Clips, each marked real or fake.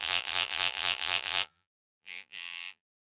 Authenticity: fake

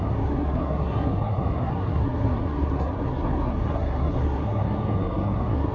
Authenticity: fake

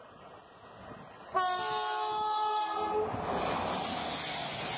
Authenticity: real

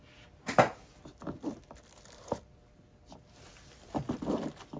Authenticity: real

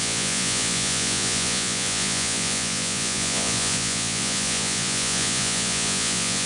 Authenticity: fake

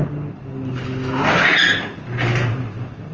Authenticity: real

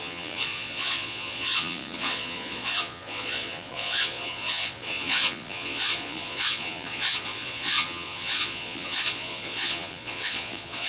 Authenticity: fake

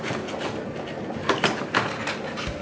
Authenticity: real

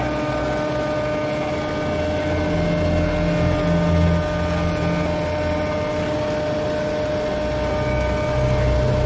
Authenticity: real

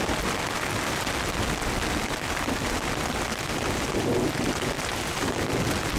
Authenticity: real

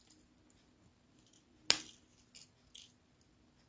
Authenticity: real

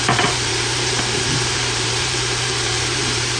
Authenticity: fake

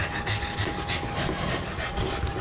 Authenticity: real